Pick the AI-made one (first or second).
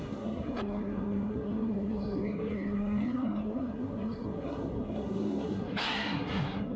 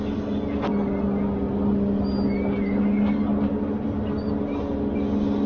first